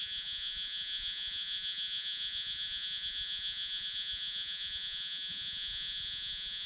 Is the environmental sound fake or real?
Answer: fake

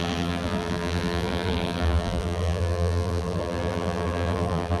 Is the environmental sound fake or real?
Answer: fake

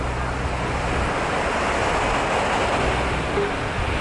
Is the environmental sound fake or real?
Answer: real